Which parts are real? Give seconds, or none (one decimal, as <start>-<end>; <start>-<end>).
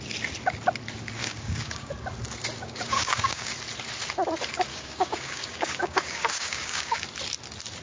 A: 0.0-1.2; 1.9-2.6; 3.5-4.7; 7.0-7.8